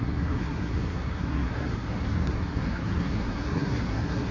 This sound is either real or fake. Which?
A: fake